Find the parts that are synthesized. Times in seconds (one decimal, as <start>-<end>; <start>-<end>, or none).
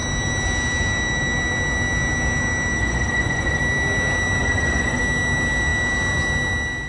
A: 2.8-3.6; 4.4-5.0